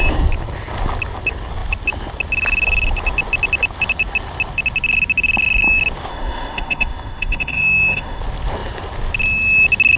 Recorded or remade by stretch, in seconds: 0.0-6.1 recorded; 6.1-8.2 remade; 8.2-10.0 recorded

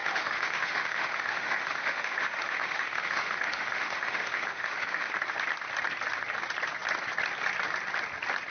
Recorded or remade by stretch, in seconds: 0.0-5.1 remade; 5.1-8.5 recorded

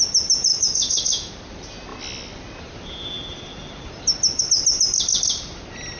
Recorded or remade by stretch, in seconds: 0.0-0.5 recorded; 0.5-1.3 remade; 1.3-6.0 recorded

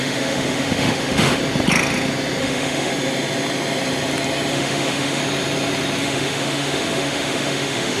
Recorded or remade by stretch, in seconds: 0.0-1.4 remade; 1.4-2.4 recorded; 2.4-2.9 remade; 2.9-4.5 recorded; 4.5-5.2 remade; 5.2-6.0 recorded; 6.0-8.0 remade